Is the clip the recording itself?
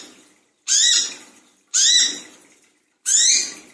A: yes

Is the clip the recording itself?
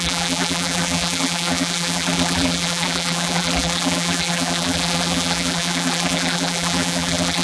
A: no